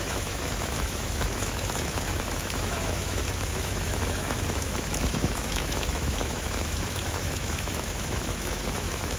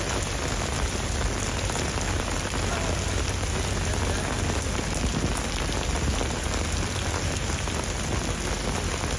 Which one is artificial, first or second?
first